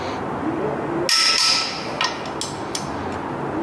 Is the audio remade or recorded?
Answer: recorded